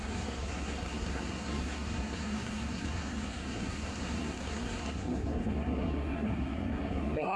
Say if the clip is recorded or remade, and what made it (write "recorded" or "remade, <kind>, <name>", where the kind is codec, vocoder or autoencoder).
remade, codec, SNAC